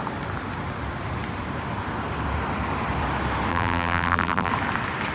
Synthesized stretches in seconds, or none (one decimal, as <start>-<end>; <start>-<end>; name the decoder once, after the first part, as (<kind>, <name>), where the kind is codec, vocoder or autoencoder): 3.5-4.5 (vocoder, BigVGAN v2)